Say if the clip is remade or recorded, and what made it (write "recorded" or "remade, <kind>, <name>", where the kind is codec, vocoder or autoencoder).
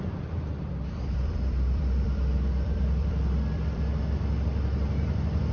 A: remade, vocoder, BigVGAN v2